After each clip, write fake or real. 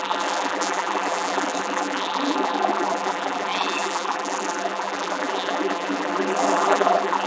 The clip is fake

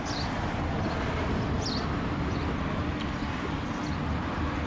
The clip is real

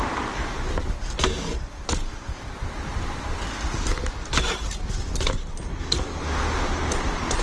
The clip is real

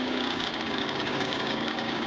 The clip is fake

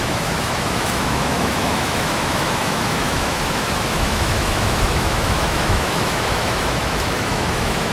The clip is fake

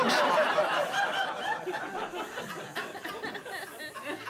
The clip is fake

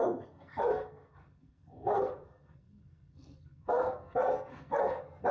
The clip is fake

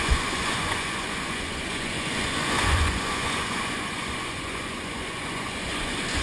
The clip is fake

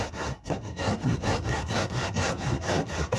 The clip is fake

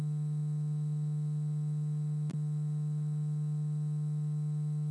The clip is real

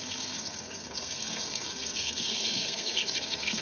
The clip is fake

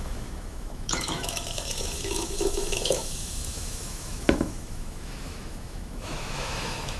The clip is fake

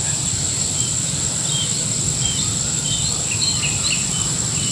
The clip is real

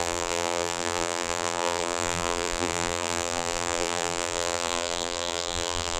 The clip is fake